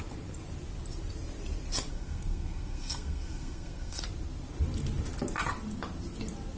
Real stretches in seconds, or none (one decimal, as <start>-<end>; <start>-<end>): 0.0-1.9; 4.0-6.6